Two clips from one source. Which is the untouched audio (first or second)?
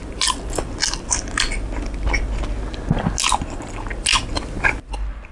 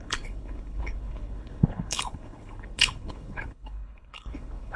first